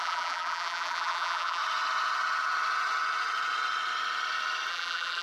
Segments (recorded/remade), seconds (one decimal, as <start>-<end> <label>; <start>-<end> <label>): 0.0-1.6 remade; 1.6-4.7 recorded; 4.7-5.2 remade